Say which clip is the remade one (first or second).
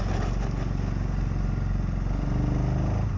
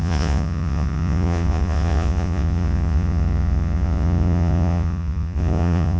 second